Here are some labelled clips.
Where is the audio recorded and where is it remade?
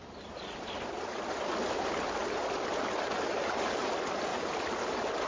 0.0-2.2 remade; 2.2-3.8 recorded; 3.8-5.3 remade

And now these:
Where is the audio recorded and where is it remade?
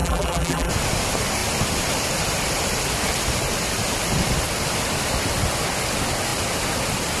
0.0-0.7 remade; 0.7-7.2 recorded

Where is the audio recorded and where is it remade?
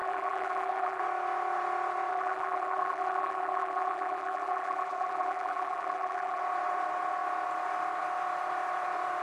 0.0-1.0 remade; 1.0-2.1 recorded; 2.1-6.4 remade; 6.4-9.2 recorded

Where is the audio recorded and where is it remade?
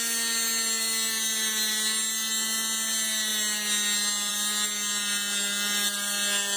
0.0-6.6 recorded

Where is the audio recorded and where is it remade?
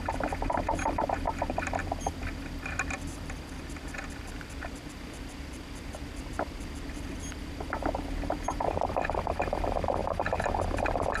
0.0-10.0 recorded; 10.0-10.5 remade; 10.5-11.2 recorded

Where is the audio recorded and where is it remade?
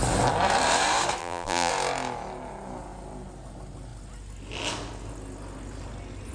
0.0-1.2 recorded; 1.2-1.7 remade; 1.7-6.3 recorded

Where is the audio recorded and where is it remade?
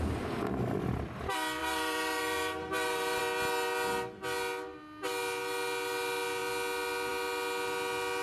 0.0-1.6 recorded; 1.6-3.2 remade; 3.2-8.2 recorded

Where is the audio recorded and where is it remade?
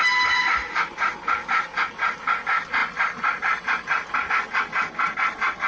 0.0-2.8 recorded; 2.8-4.3 remade; 4.3-5.7 recorded